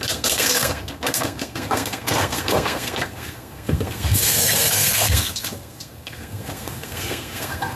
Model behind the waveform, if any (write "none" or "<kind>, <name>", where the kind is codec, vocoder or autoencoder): codec, SNAC